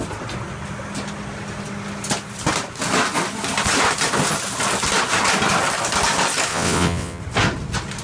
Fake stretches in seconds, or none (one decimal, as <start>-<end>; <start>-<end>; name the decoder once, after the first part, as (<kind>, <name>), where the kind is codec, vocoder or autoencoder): 6.5-7.2 (vocoder, WaveNeXt)